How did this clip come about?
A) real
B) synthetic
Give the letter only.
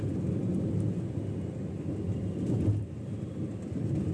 A